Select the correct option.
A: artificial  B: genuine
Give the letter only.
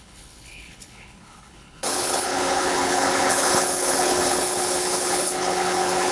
A